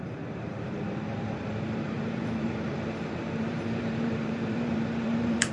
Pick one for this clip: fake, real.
fake